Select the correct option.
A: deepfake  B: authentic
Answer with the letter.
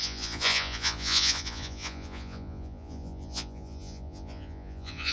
A